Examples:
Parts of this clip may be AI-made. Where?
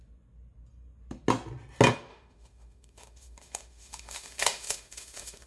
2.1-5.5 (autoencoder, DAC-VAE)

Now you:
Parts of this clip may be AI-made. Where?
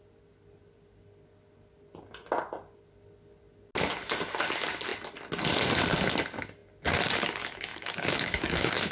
7.7-8.9 (autoencoder, DAC-VAE)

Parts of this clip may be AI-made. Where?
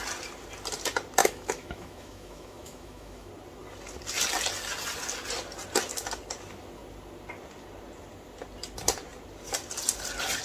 1.2-3.3 (autoencoder, DAC-VAE)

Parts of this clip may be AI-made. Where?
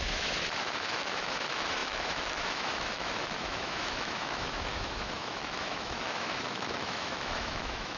0.0-8.0 (autoencoder, DAC-VAE)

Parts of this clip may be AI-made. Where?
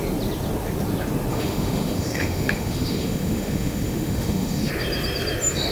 1.3-4.7 (autoencoder, DAC-VAE)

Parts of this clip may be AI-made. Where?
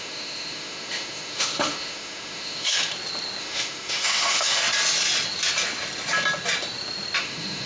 0.0-2.9 (autoencoder, DAC-VAE); 3.4-4.6; 7.2-7.7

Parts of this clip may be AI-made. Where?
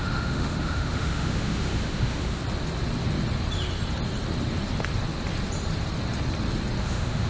0.0-2.4 (autoencoder, DAC-VAE); 6.8-7.3